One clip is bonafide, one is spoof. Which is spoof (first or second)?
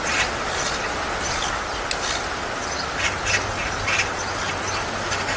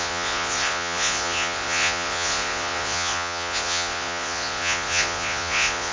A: second